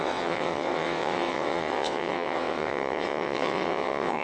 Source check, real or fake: fake